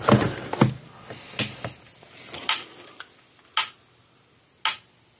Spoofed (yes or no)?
no